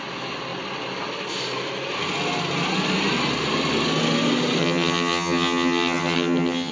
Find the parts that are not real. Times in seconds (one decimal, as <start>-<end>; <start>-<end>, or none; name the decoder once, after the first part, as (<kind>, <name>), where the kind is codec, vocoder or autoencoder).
4.6-6.7 (vocoder, HiFi-GAN)